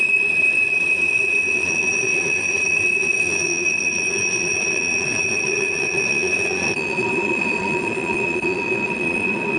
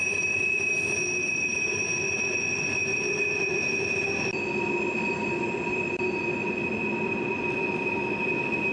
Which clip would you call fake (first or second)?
first